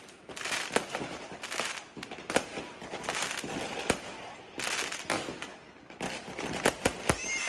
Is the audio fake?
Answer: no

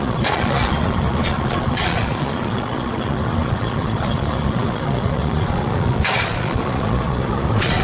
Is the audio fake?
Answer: yes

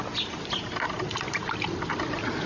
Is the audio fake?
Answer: no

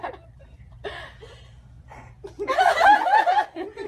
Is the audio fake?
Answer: no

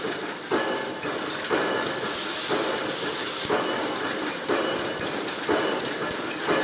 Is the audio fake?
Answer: yes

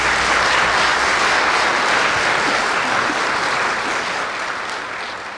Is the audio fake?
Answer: no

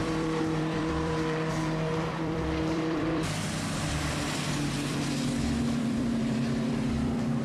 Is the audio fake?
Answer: yes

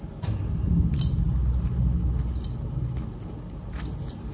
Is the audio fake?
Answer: no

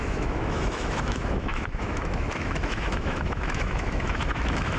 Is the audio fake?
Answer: yes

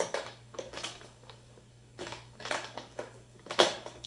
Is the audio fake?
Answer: yes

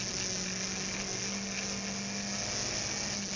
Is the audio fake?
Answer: no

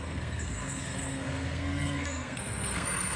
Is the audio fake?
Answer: yes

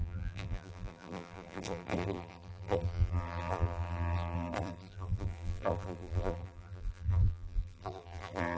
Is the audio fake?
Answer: yes